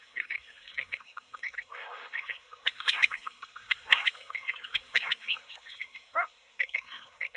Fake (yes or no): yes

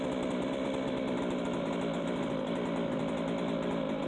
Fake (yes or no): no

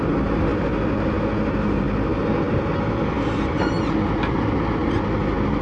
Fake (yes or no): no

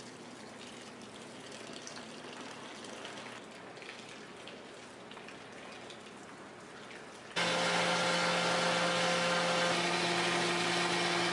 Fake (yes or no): no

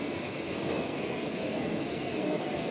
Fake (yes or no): yes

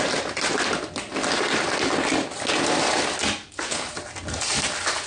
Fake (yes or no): no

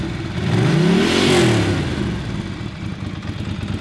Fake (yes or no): no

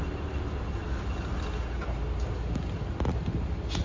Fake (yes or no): no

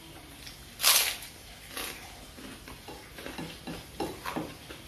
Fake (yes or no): no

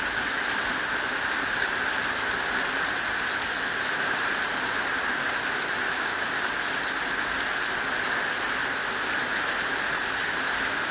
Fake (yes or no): no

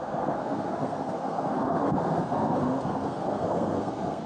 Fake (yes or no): yes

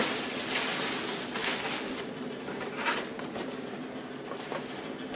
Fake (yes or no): no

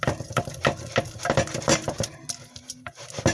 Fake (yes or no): no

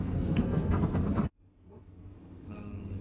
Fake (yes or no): yes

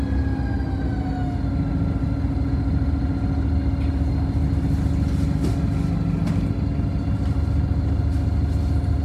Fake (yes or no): no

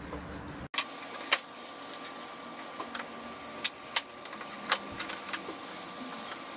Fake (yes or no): no